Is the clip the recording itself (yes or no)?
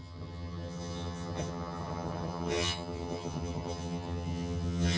no